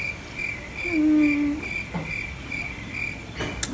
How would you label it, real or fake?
real